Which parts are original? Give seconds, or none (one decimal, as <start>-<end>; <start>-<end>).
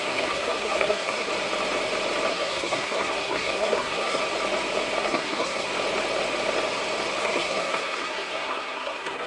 1.3-2.3; 4.2-5.0; 5.7-7.2